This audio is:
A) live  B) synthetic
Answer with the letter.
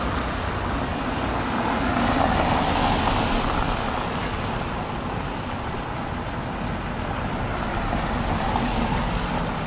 A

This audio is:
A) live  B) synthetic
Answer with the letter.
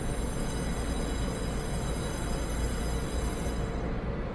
A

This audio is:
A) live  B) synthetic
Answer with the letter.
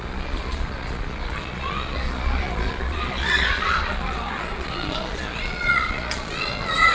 B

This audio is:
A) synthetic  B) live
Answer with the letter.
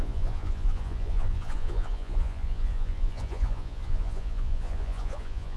A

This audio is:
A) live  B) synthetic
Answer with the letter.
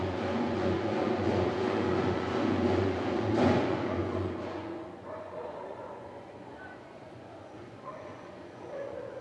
B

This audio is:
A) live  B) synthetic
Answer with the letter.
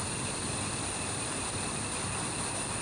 A